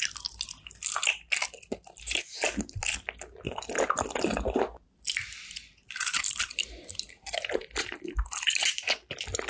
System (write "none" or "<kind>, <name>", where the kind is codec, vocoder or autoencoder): none